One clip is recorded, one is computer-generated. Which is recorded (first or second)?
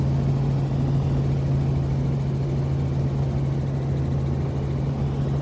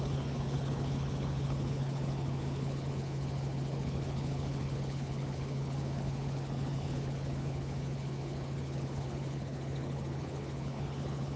first